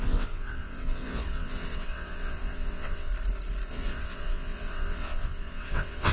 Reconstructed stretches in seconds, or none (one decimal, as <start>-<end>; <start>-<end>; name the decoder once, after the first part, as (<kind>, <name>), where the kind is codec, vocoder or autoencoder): 0.0-3.1 (vocoder, WaveNeXt); 3.7-6.1